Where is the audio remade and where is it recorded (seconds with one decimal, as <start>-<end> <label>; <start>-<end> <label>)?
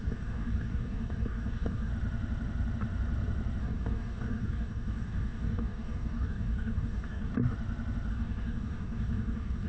0.0-1.9 remade; 1.9-3.6 recorded; 3.6-7.3 remade; 7.3-8.1 recorded; 8.1-9.7 remade